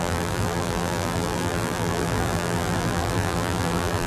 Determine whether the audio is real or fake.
fake